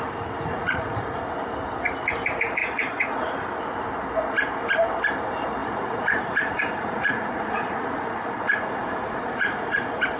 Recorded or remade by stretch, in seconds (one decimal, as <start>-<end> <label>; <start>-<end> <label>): 0.0-0.5 recorded; 0.5-1.2 remade; 1.2-2.6 recorded; 2.6-3.1 remade; 3.1-5.6 recorded; 5.6-10.2 remade

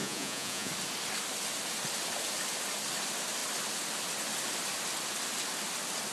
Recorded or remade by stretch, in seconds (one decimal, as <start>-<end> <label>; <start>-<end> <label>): 0.0-0.7 remade; 0.7-6.1 recorded